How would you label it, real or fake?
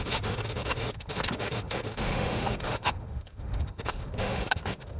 fake